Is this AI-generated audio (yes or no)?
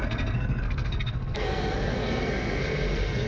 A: yes